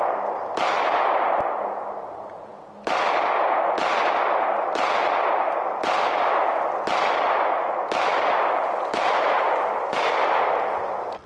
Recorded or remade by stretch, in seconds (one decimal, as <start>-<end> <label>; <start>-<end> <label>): 0.0-11.3 recorded